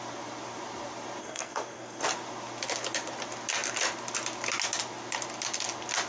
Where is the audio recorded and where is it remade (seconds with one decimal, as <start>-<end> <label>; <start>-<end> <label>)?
0.0-1.2 recorded; 1.2-2.0 remade; 2.0-6.1 recorded